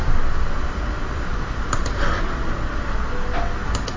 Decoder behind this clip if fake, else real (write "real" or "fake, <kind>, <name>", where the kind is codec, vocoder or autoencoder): real